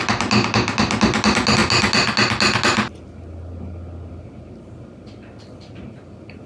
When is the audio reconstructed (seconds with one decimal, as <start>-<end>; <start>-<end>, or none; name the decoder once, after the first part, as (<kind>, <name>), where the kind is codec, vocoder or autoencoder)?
none